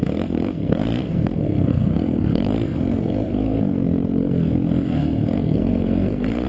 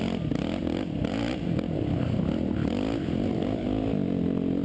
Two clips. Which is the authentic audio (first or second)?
second